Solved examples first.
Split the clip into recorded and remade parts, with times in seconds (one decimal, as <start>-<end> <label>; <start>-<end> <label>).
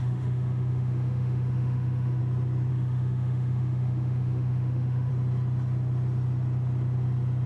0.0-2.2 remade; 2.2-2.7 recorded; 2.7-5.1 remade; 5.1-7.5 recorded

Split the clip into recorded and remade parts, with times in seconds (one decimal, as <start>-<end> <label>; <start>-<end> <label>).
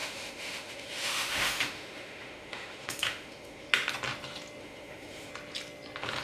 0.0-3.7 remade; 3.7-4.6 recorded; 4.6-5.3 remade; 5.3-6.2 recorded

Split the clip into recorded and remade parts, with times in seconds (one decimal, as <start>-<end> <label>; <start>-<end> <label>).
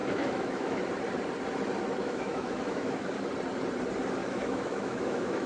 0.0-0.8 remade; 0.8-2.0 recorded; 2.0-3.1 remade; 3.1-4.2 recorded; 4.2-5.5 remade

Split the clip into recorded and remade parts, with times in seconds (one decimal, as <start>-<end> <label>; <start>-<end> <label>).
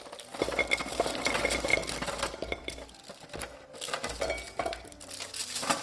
0.0-5.8 recorded